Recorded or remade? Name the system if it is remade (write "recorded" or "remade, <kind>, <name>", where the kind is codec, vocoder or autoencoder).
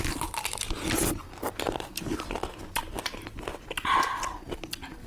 recorded